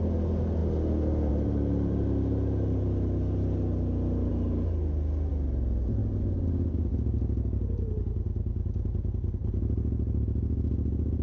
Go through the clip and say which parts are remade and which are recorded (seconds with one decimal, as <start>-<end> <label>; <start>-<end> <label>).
0.0-11.2 recorded